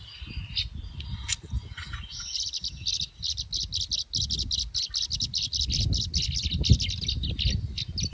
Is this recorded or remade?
recorded